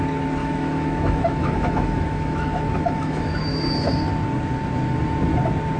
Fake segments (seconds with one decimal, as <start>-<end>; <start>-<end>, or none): 0.4-3.9